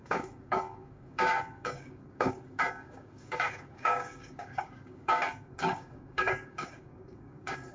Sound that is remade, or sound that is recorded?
remade